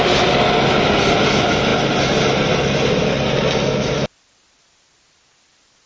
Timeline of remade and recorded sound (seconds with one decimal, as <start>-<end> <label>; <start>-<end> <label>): 0.0-5.9 recorded